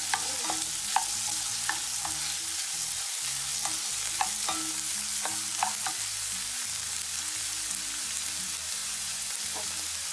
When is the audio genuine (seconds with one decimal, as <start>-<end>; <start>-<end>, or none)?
0.0-8.8; 9.3-10.1